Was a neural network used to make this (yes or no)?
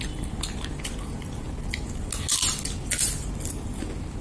no